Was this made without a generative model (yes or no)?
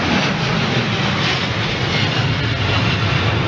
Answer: yes